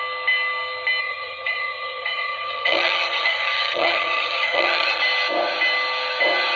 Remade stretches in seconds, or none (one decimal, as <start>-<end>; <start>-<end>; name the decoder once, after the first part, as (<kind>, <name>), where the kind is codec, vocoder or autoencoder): 1.0-5.0 (vocoder, HiFi-GAN)